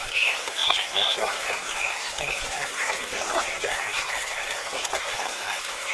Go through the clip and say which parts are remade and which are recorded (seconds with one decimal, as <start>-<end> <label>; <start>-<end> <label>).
0.0-5.9 remade